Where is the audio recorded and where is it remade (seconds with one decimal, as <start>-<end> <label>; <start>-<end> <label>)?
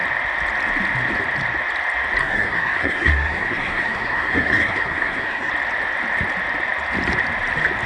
0.0-2.2 recorded; 2.2-5.5 remade; 5.5-7.9 recorded